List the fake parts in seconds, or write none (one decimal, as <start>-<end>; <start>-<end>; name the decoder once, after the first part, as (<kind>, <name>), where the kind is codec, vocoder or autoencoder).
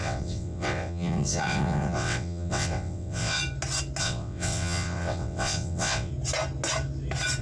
0.0-3.4 (vocoder, WaveNeXt); 4.0-6.1